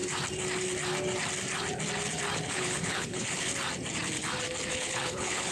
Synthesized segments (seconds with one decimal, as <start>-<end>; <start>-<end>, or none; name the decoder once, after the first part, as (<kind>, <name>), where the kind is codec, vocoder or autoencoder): 2.5-3.5 (codec, HILCodec); 4.7-5.5